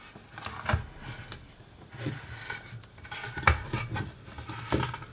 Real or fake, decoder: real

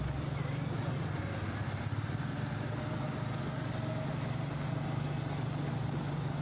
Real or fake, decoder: real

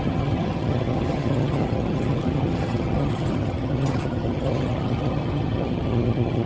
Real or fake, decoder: fake, vocoder, HiFi-GAN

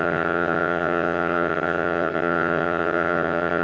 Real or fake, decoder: fake, vocoder, HiFi-GAN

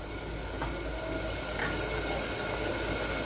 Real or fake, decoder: real